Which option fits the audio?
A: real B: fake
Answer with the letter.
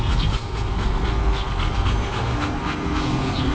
B